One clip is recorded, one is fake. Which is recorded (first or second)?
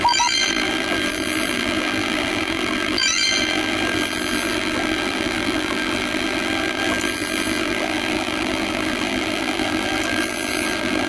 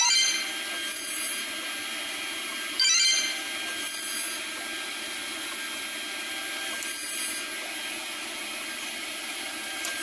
second